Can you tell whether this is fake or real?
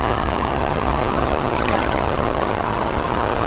fake